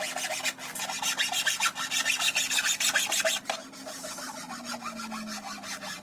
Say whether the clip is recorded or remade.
recorded